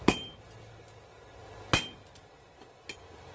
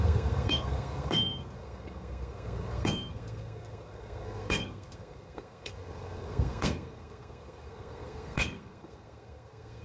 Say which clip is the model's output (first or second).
second